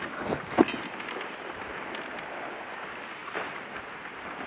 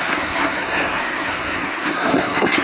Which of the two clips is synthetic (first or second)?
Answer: second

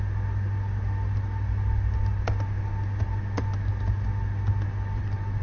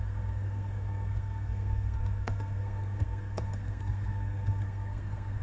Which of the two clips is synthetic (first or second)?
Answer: second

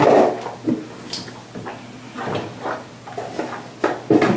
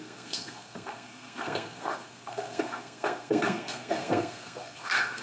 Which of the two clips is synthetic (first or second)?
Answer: second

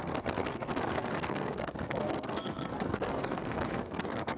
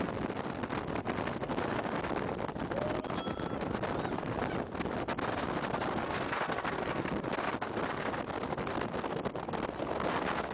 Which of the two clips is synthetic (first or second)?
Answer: first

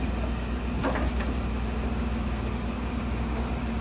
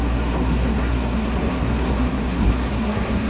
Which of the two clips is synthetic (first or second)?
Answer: second